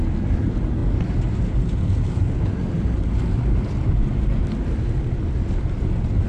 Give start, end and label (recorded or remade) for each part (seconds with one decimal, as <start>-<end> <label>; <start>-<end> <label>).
0.0-6.3 recorded